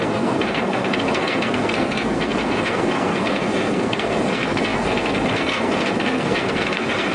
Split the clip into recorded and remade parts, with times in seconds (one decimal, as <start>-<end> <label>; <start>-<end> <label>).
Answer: 0.0-7.1 remade